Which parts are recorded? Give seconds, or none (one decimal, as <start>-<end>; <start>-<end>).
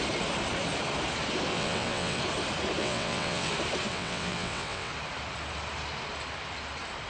0.0-1.5; 2.2-2.8; 3.5-3.9; 4.9-7.1